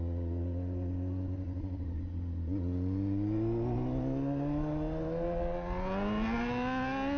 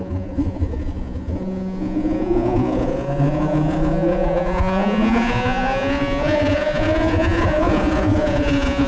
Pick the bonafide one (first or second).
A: first